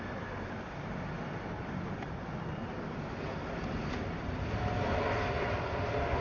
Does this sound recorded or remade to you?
recorded